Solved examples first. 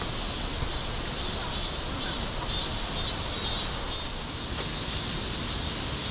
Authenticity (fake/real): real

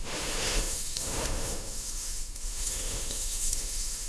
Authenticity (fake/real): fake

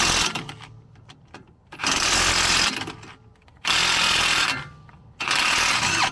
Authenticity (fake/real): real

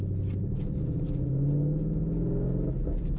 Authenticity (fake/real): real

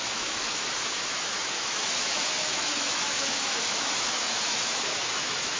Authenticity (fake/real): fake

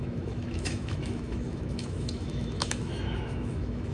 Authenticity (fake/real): fake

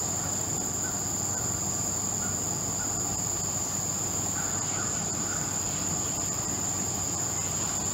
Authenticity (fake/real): real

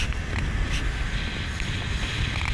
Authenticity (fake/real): real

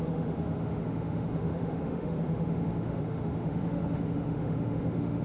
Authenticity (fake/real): fake